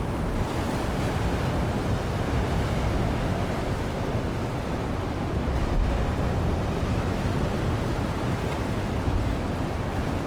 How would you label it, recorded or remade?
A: recorded